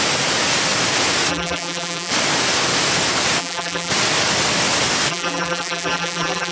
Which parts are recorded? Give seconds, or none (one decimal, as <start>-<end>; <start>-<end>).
0.0-1.3; 2.1-3.4; 3.9-5.1